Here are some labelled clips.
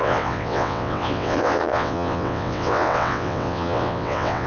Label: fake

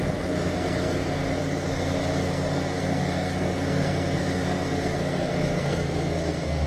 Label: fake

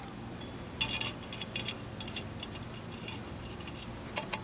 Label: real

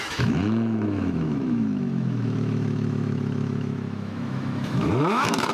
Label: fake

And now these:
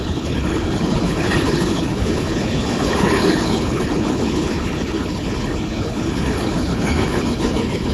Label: fake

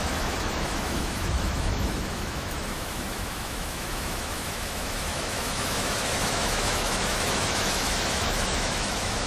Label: fake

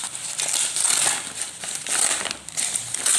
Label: real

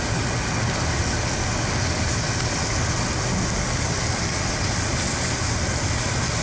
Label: real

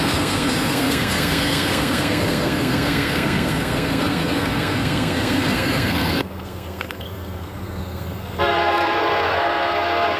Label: fake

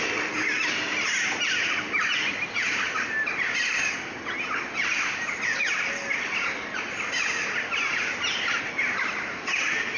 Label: real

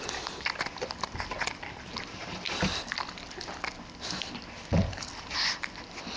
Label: real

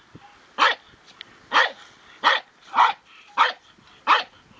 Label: real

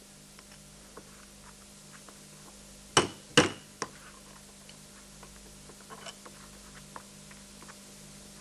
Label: real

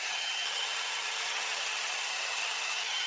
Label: fake